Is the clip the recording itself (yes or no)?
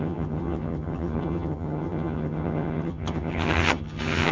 no